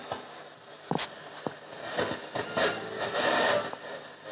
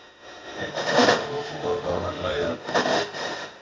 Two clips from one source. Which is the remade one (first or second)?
second